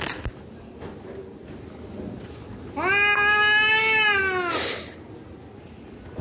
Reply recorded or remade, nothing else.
recorded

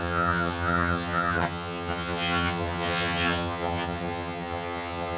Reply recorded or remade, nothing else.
remade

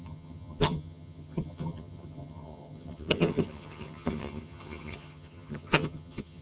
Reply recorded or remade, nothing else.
remade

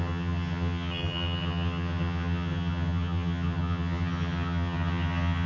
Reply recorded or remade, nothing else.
remade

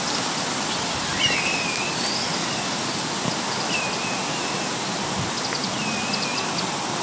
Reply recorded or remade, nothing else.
recorded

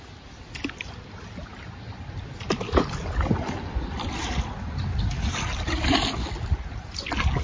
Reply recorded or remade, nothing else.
recorded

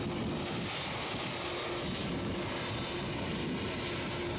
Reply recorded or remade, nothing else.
recorded